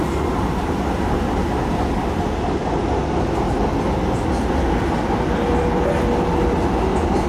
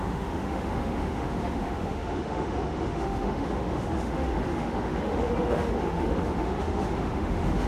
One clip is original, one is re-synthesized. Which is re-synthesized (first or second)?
second